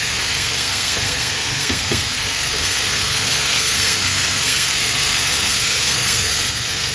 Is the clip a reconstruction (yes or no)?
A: yes